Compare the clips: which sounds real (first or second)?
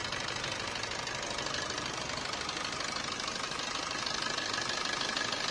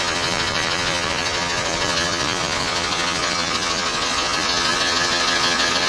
first